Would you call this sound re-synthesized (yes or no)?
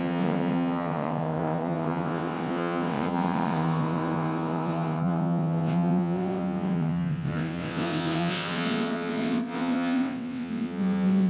yes